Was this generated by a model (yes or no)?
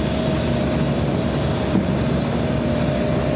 no